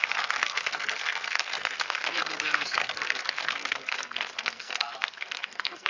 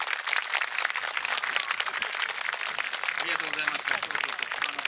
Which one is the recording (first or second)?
second